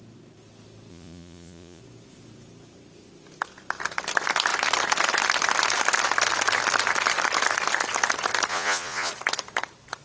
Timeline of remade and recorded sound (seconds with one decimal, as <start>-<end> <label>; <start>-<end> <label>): 0.0-0.9 recorded; 0.9-1.8 remade; 1.8-8.5 recorded; 8.5-9.1 remade; 9.1-10.0 recorded